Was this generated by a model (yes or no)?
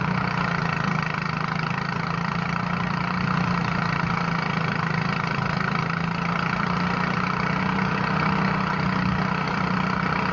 no